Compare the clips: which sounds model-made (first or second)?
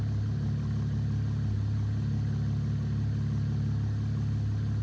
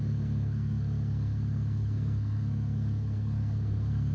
second